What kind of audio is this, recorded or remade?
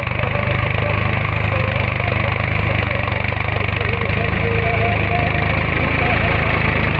recorded